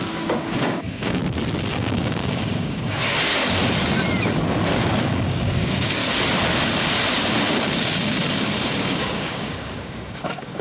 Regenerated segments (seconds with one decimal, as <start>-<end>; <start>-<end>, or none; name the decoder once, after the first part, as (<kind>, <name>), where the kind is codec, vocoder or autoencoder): 0.0-1.2 (codec, DAC); 1.7-3.3; 5.0-6.0; 8.7-10.6